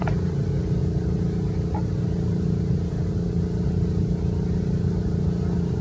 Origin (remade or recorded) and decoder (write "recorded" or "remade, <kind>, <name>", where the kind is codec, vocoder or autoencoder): recorded